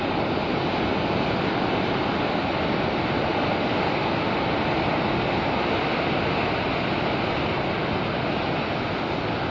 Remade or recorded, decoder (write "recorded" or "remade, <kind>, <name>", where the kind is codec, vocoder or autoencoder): recorded